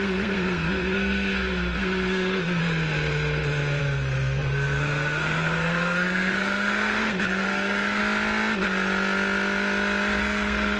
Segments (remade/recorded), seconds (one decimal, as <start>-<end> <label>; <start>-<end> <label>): 0.0-2.6 remade; 2.6-3.8 recorded; 3.8-8.0 remade; 8.0-10.2 recorded; 10.2-10.8 remade